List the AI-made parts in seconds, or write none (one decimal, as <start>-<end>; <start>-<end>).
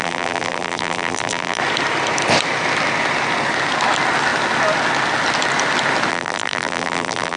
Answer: 0.0-1.6; 6.1-7.4